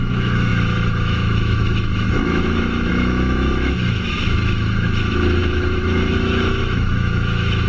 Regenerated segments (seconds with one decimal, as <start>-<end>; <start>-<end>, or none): 0.0-7.7